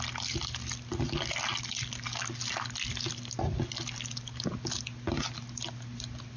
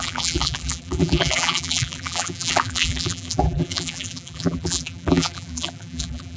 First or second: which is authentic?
first